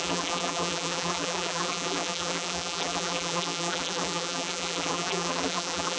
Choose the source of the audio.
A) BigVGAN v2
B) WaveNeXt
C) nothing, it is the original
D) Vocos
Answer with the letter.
A